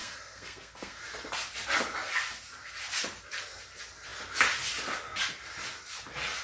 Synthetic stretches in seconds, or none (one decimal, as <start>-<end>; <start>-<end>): 0.0-1.0